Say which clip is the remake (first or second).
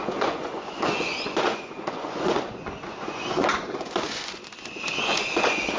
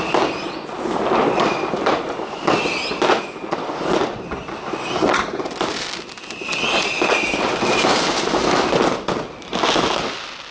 first